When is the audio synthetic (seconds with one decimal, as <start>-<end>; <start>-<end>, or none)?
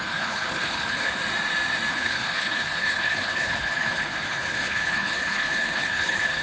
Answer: 0.0-1.2; 1.9-6.4